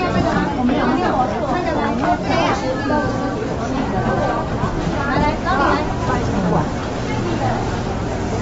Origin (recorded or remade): recorded